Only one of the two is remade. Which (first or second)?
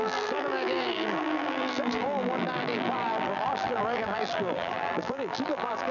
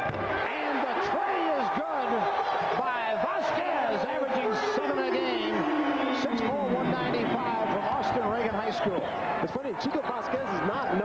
first